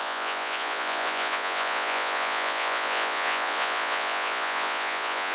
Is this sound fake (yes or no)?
yes